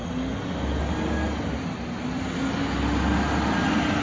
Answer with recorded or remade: recorded